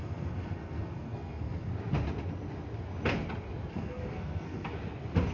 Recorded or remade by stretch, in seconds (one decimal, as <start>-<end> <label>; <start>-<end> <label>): 0.0-1.7 remade; 1.7-3.7 recorded; 3.7-4.7 remade; 4.7-5.3 recorded